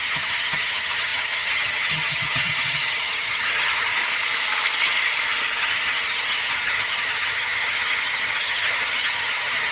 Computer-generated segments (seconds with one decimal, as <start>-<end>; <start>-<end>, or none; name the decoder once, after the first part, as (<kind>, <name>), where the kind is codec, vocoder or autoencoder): 0.0-4.0 (vocoder, HiFi-GAN); 5.6-9.7